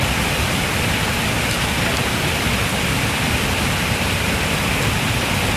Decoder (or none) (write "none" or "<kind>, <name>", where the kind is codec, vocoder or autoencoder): vocoder, BigVGAN v2